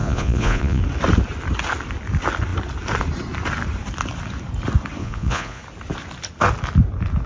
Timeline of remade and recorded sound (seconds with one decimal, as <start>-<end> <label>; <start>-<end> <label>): 0.0-0.8 remade; 0.8-5.0 recorded; 5.0-5.6 remade; 5.6-7.3 recorded